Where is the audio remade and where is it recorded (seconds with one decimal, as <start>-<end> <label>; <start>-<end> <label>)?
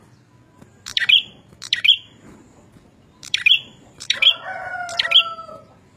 0.0-0.7 recorded; 0.7-4.3 remade; 4.3-6.0 recorded